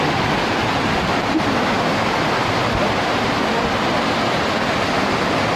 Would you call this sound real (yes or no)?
yes